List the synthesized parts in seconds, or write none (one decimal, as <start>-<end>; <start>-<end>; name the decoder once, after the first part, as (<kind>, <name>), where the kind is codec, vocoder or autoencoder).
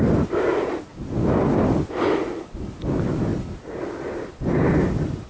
3.3-5.3 (vocoder, BigVGAN v2)